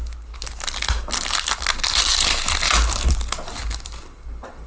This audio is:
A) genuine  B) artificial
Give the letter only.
A